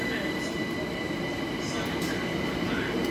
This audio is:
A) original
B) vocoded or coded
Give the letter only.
A